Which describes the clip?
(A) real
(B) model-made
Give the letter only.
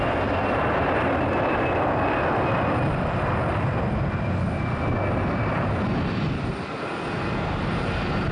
A